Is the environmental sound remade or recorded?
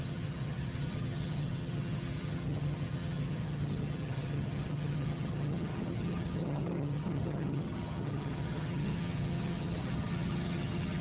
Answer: remade